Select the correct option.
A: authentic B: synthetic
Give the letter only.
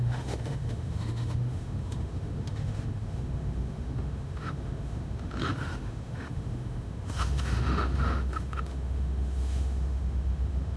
B